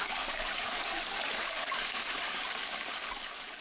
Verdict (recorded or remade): remade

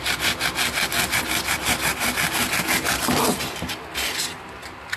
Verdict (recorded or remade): recorded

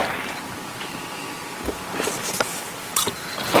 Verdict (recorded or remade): recorded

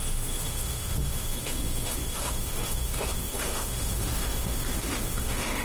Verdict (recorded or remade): remade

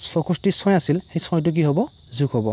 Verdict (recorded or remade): recorded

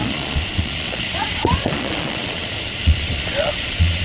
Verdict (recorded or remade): remade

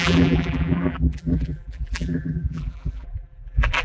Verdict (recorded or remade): remade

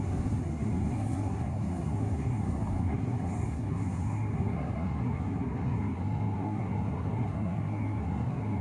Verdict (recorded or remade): remade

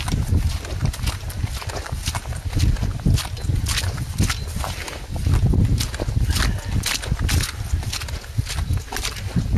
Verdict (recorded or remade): recorded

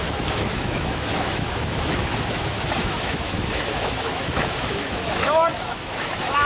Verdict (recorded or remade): remade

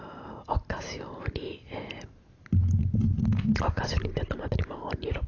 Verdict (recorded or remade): recorded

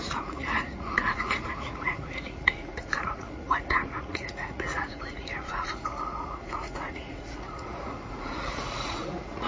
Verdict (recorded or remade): remade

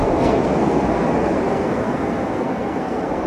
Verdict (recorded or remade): remade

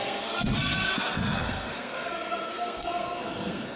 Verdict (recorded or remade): remade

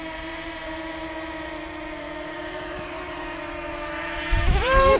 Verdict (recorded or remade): remade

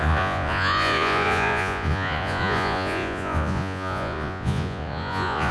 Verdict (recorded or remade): remade